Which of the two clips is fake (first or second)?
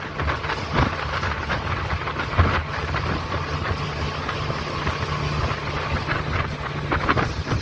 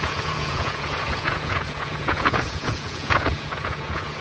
second